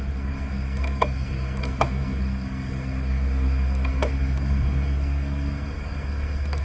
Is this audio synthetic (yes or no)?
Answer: yes